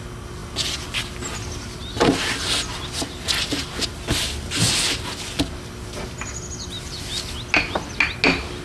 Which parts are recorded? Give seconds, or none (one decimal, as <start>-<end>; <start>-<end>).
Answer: 0.0-8.6